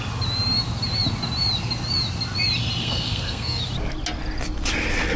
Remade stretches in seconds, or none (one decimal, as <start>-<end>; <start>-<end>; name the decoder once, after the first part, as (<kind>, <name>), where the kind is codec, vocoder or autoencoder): 2.8-3.6 (codec, SNAC)